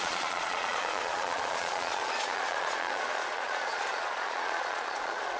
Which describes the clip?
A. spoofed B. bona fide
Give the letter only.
A